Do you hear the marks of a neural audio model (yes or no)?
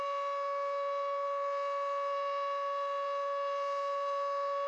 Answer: yes